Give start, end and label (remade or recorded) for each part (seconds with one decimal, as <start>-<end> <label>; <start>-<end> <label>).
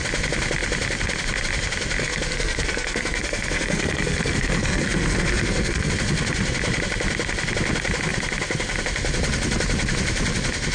0.0-2.0 recorded; 2.0-5.9 remade; 5.9-10.7 recorded